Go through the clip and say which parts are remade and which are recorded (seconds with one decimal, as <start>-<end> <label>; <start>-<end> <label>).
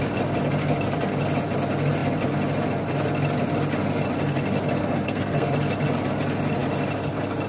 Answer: 0.0-4.8 recorded; 4.8-5.5 remade; 5.5-7.5 recorded